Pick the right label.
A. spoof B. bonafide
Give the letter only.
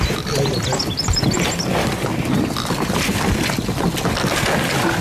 B